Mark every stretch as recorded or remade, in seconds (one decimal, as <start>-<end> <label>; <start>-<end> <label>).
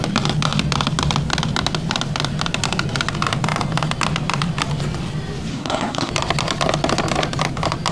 0.0-5.5 recorded; 5.5-6.1 remade; 6.1-7.9 recorded